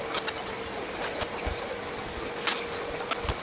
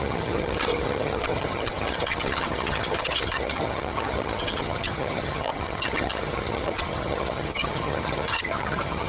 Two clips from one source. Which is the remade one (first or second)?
second